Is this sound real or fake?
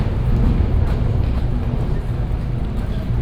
real